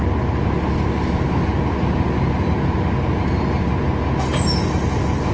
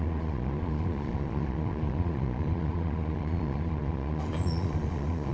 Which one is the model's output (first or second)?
second